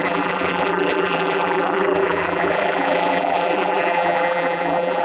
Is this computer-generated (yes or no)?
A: yes